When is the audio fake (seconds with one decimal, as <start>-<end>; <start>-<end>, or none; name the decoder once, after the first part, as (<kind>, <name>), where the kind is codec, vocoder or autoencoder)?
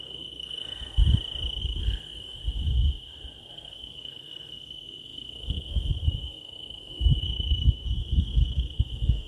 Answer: 0.0-1.0 (codec, SNAC); 1.6-2.4; 3.5-9.3